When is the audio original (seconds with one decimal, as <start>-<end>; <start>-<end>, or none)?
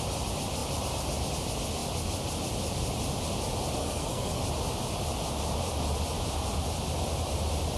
0.0-3.8; 4.4-7.8